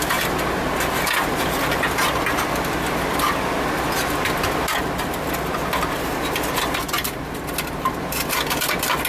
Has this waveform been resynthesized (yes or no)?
no